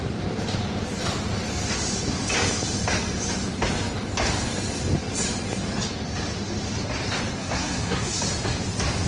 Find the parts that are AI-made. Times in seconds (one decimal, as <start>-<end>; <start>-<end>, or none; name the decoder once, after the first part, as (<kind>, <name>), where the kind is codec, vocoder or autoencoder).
7.4-8.2 (codec, SNAC)